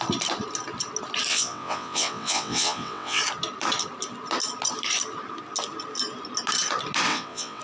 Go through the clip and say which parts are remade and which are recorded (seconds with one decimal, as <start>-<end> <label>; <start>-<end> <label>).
0.0-1.3 recorded; 1.3-3.2 remade; 3.2-7.1 recorded; 7.1-7.6 remade